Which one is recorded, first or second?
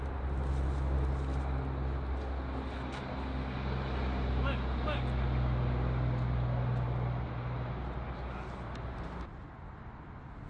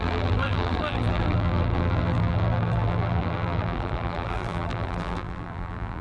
first